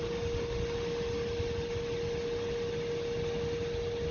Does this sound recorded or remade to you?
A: recorded